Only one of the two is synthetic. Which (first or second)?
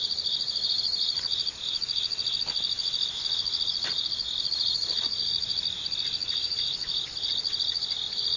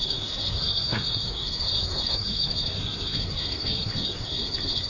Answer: second